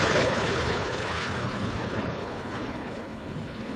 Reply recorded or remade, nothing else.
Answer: remade